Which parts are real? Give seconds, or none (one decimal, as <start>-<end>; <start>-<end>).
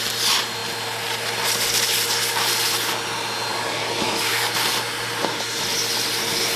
0.0-3.5; 4.5-6.6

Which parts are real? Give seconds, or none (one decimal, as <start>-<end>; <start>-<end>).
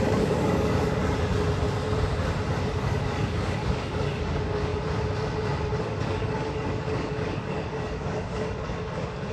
1.0-2.8; 4.7-5.8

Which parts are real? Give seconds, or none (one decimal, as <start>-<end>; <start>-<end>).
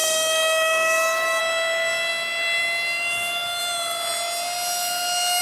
1.4-5.4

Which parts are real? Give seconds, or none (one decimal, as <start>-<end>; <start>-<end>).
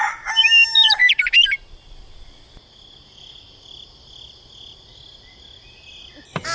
0.0-6.5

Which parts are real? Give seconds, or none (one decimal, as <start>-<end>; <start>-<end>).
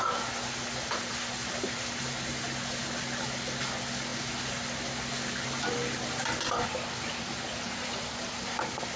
0.0-9.0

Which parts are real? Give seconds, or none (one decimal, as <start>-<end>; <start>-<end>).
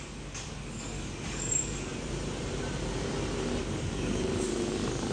1.9-3.6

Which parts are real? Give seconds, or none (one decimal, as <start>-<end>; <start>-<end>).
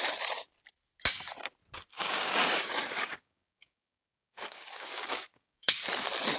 0.0-1.9; 5.7-6.4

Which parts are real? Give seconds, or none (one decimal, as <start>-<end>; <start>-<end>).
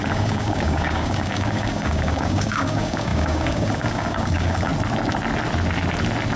4.7-6.4